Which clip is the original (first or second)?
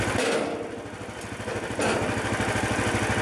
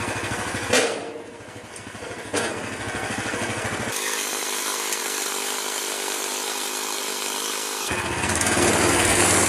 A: first